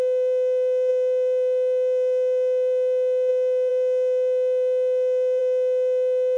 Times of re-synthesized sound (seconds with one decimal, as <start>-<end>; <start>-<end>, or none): none